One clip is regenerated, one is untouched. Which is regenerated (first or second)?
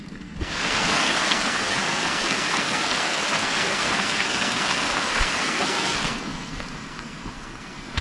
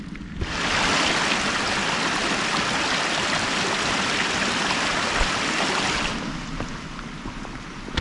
first